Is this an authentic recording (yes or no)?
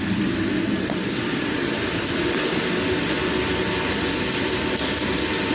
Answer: yes